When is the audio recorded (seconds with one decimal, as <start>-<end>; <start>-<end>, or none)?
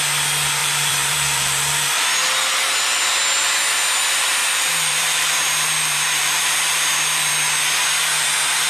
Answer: 0.0-0.6; 2.1-4.4; 7.3-8.7